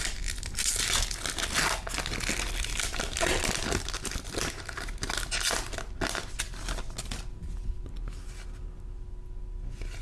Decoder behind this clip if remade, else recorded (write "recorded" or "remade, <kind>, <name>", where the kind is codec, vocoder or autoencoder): recorded